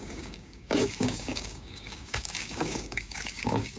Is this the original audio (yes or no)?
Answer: no